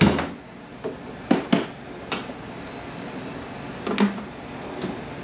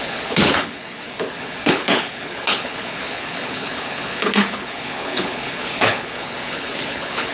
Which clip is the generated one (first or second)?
second